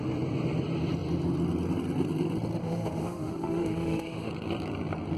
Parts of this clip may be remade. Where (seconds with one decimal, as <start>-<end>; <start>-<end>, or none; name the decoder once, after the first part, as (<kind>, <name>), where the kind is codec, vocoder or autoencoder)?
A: 2.6-4.3 (autoencoder, DAC-VAE)